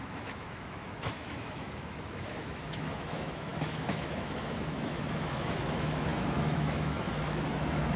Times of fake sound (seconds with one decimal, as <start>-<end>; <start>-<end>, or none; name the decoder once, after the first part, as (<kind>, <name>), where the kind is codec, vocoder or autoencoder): 0.0-8.0 (autoencoder, DAC-VAE)